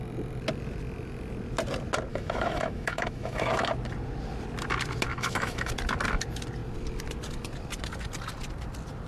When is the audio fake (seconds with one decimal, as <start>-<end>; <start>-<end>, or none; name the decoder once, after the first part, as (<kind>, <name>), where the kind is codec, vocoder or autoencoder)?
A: 2.1-3.7 (autoencoder, DAC-VAE); 5.1-5.7